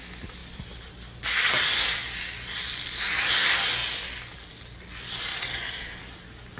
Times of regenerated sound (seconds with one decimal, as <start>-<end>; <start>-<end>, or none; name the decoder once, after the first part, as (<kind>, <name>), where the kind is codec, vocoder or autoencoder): none